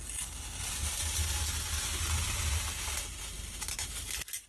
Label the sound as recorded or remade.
recorded